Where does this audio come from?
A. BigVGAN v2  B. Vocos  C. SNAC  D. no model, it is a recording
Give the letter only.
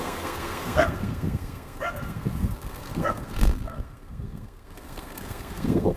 C